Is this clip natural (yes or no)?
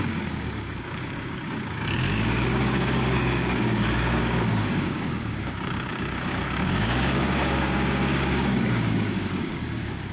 no